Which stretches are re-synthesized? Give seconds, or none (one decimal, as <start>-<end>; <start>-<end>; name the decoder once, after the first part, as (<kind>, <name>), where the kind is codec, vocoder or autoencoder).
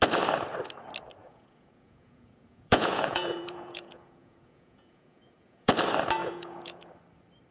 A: 1.2-5.7 (vocoder, Vocos); 6.2-6.9